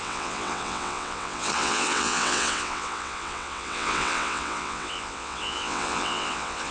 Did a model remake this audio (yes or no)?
yes